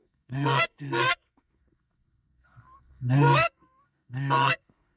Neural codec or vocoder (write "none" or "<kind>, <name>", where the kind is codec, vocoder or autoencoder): codec, SNAC